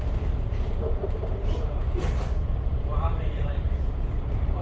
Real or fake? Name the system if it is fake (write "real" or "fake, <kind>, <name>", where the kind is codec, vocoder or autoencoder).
fake, vocoder, BigVGAN v2